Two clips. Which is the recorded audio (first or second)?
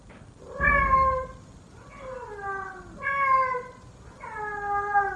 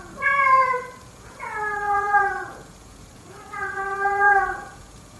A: first